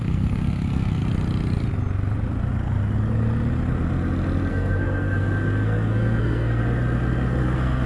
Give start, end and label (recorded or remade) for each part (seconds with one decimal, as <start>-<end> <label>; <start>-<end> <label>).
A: 0.0-1.0 remade; 1.0-4.5 recorded; 4.5-6.6 remade; 6.6-7.4 recorded; 7.4-7.9 remade